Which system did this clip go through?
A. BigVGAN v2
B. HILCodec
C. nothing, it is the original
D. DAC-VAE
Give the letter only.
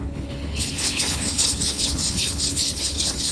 B